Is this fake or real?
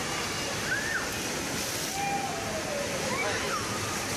real